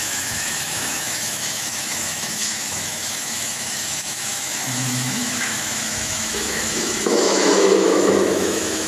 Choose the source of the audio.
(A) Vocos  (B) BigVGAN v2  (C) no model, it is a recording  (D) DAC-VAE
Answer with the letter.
D